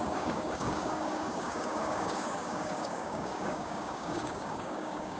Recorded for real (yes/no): no